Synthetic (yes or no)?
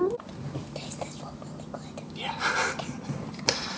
no